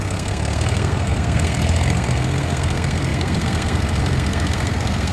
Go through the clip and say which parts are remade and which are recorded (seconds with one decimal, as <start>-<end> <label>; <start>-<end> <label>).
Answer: 0.0-5.1 remade